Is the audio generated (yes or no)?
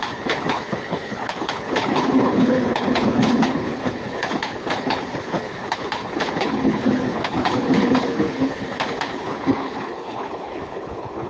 yes